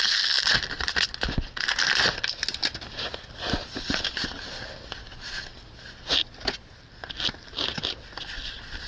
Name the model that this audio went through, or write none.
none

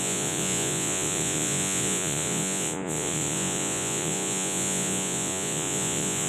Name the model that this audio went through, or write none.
vocoder, Vocos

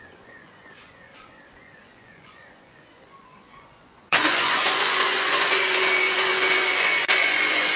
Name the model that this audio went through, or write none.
vocoder, Vocos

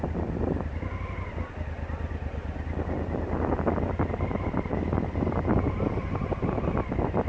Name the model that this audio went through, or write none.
none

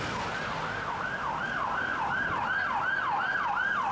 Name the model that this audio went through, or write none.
none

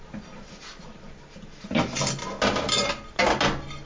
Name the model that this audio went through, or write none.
none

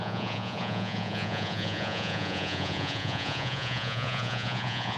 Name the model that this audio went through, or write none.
vocoder, Vocos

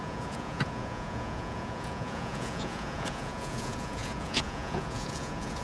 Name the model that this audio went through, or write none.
vocoder, Vocos